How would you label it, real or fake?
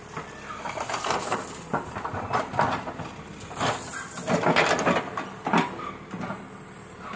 real